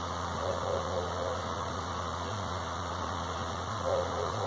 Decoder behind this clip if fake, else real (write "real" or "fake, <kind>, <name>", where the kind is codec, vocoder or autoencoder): fake, vocoder, Vocos